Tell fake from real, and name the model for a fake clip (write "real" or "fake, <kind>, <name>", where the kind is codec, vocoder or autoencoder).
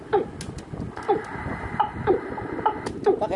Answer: real